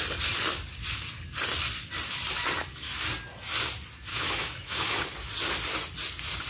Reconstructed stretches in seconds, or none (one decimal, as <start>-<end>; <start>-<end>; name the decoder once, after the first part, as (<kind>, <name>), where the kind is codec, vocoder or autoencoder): 4.1-4.9 (autoencoder, DAC-VAE)